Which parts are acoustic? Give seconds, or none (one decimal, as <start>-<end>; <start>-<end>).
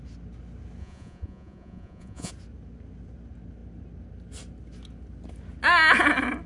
0.0-0.8; 2.3-6.5